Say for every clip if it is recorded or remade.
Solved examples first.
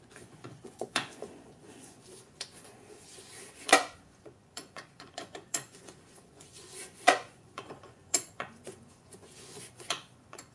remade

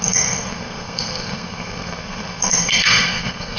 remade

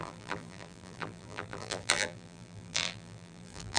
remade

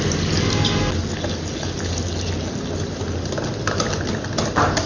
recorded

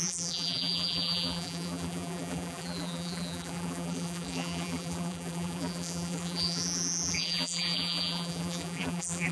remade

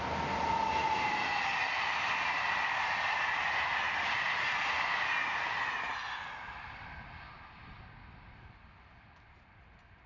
recorded